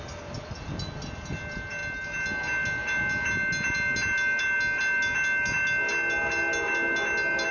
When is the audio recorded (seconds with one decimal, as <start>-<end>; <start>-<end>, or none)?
0.0-7.5

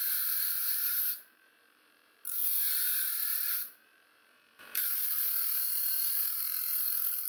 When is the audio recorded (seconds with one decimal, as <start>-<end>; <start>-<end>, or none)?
2.4-3.5; 5.0-5.7

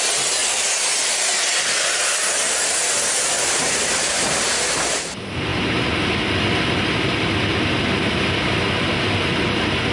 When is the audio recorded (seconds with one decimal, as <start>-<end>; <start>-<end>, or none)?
0.0-0.4; 4.4-9.9

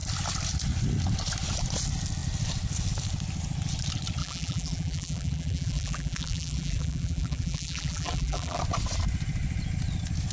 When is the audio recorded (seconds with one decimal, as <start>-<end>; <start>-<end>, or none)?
0.0-4.2; 8.6-10.3

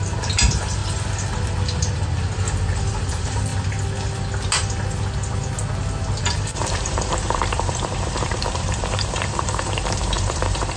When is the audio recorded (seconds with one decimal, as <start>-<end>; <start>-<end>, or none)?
0.8-2.9; 3.5-6.2

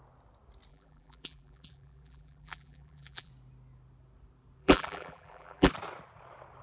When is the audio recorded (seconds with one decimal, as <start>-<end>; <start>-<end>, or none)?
0.0-0.7; 3.3-4.6; 5.7-6.6